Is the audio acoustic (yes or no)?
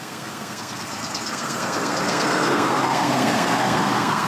no